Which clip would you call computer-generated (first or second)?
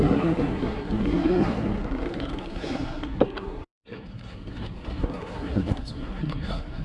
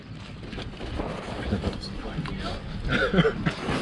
first